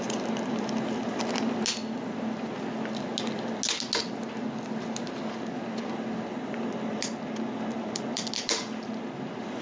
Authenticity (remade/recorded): recorded